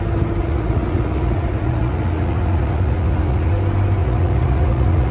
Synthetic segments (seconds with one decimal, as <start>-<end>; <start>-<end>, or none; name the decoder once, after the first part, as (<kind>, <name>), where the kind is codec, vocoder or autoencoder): 0.4-3.5 (vocoder, Vocos); 4.0-5.1